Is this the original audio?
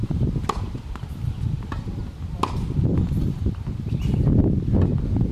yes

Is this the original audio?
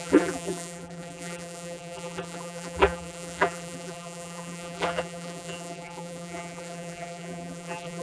no